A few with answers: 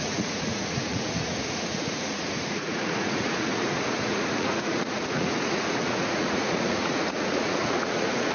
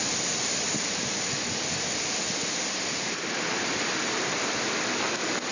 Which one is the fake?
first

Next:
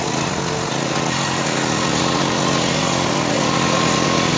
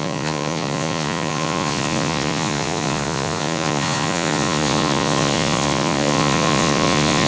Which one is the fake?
second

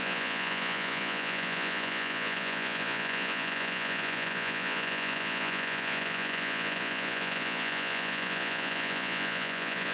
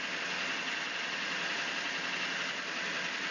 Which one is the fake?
first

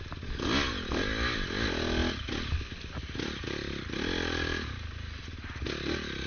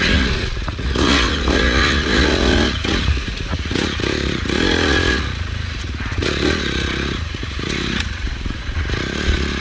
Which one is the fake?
second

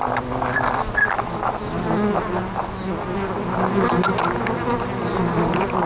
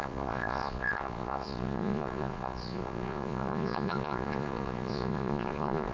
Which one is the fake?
second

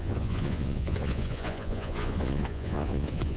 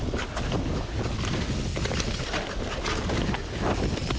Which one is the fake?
first